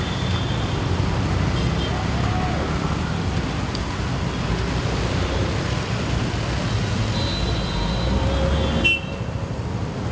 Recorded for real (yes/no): yes